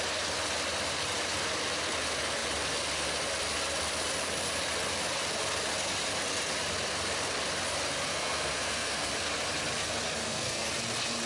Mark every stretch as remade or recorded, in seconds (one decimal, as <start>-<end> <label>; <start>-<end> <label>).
0.0-8.1 recorded; 8.1-9.1 remade; 9.1-10.2 recorded; 10.2-10.7 remade; 10.7-11.3 recorded